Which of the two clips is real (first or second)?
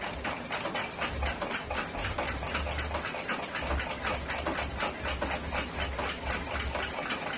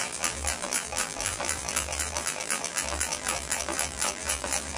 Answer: first